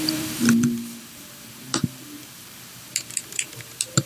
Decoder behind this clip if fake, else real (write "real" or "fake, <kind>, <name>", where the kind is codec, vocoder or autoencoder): fake, vocoder, BigVGAN v2